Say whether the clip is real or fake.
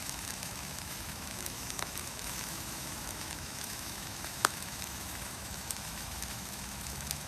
fake